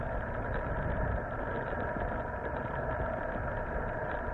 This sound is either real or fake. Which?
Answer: real